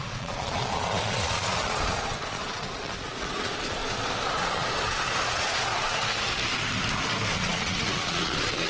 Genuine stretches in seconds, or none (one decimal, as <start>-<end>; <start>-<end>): 3.8-4.4; 5.7-7.3